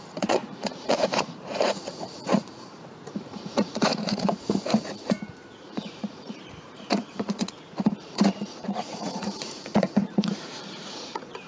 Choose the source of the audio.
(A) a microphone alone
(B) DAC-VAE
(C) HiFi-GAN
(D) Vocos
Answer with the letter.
D